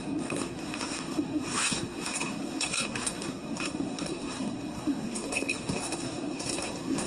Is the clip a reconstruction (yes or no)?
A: yes